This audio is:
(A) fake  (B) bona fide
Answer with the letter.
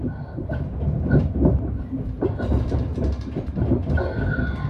B